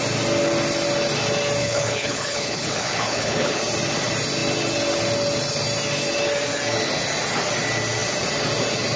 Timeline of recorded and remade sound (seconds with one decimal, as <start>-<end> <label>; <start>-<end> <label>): 0.0-1.6 recorded; 1.6-3.6 remade; 3.6-9.0 recorded